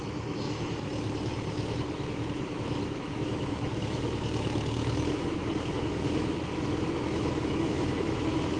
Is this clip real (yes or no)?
no